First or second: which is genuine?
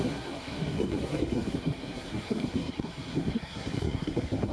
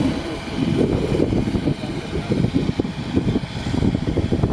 second